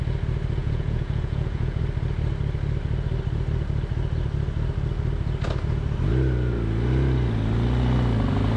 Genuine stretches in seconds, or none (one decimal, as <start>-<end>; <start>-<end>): 0.0-0.6; 1.8-8.6